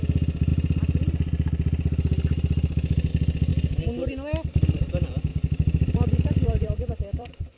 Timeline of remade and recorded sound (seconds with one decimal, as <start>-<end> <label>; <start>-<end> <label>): 0.0-5.3 recorded; 5.3-7.6 remade